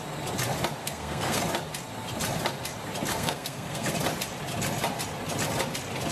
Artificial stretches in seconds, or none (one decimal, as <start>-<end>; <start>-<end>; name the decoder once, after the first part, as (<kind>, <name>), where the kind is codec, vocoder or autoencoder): 0.8-1.4 (codec, SNAC); 3.1-3.9